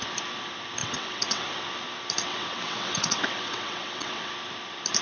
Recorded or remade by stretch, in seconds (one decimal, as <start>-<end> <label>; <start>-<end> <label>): 0.0-0.8 recorded; 0.8-1.5 remade; 1.5-2.3 recorded; 2.3-4.3 remade; 4.3-5.0 recorded